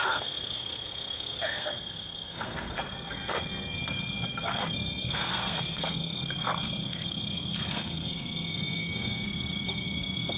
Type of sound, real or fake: fake